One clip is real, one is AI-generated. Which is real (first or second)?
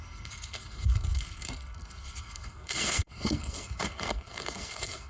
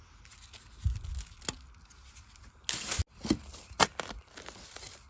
second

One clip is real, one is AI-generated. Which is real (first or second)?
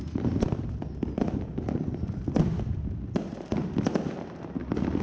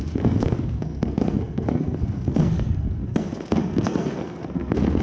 first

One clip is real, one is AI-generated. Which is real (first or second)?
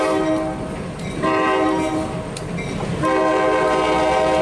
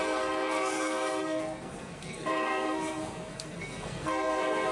first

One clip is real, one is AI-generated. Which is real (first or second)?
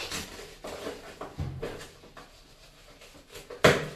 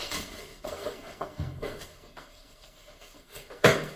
first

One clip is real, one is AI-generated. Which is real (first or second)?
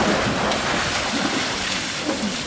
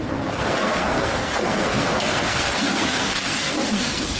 first